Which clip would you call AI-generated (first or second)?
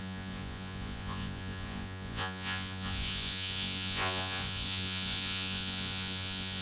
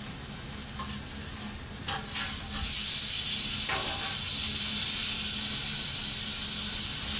first